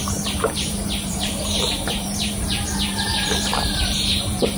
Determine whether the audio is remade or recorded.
remade